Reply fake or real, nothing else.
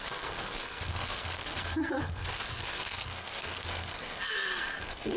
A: fake